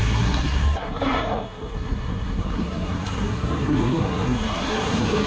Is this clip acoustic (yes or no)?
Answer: no